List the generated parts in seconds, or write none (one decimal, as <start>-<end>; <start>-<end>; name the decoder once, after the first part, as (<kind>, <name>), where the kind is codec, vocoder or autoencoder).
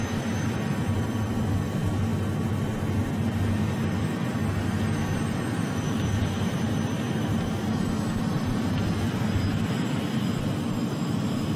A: 0.0-2.1 (vocoder, BigVGAN v2); 5.3-11.6